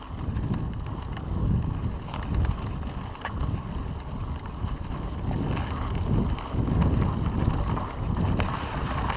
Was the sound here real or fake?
real